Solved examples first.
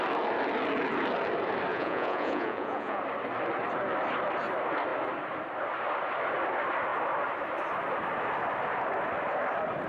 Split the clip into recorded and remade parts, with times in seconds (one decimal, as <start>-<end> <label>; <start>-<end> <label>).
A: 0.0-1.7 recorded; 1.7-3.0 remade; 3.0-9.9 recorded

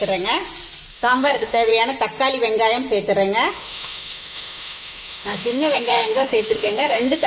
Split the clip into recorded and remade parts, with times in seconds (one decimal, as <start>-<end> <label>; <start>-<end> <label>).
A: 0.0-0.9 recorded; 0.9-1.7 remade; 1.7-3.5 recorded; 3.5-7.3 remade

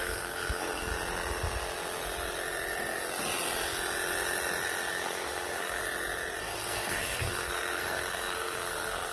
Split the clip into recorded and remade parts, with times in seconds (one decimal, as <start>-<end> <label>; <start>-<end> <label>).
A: 0.0-0.9 remade; 0.9-4.9 recorded; 4.9-5.8 remade; 5.8-6.4 recorded; 6.4-9.1 remade

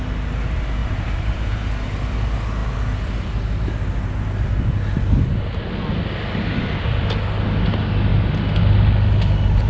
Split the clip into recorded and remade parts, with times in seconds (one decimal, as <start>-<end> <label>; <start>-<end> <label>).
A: 0.0-0.8 recorded; 0.8-1.7 remade; 1.7-9.7 recorded

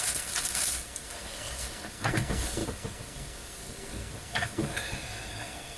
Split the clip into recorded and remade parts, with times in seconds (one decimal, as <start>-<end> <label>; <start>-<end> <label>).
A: 0.0-5.8 remade

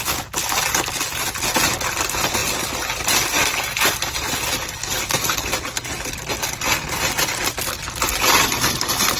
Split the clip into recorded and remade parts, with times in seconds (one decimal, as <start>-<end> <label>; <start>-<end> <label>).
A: 0.0-9.2 recorded

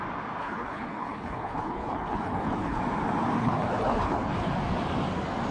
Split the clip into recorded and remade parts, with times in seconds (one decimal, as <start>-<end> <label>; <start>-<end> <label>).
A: 0.0-0.4 recorded; 0.4-2.8 remade; 2.8-3.4 recorded; 3.4-4.5 remade; 4.5-5.5 recorded